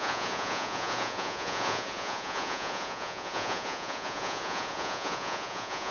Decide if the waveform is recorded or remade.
remade